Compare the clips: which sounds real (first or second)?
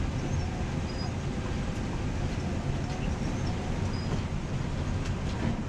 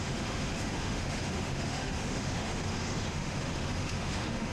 first